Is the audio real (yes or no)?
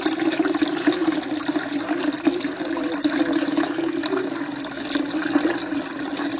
yes